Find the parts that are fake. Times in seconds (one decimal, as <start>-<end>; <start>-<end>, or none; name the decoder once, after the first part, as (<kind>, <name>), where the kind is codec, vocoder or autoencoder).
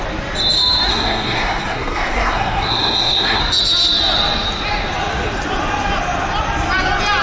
0.9-3.4 (codec, SNAC)